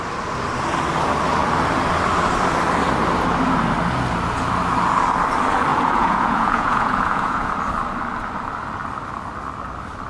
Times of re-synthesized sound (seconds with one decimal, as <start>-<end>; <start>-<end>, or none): 5.7-7.5